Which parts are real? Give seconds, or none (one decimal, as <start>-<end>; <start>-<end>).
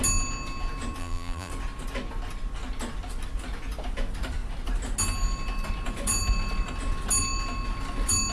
0.0-1.0; 1.5-8.3